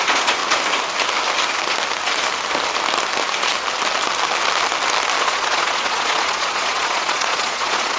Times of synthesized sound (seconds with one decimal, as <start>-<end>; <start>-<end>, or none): 0.0-0.4; 5.2-8.0